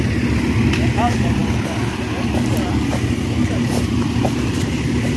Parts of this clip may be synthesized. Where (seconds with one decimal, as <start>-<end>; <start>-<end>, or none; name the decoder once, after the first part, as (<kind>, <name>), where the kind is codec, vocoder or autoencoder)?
none